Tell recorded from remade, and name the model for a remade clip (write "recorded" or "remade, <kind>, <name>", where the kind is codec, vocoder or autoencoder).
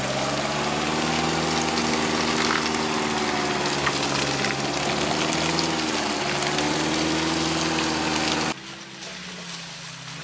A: recorded